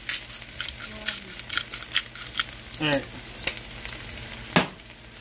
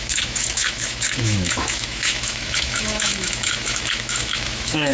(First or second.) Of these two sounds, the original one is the first